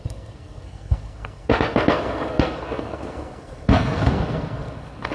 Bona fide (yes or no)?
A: no